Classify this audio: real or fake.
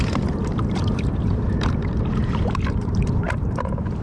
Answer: fake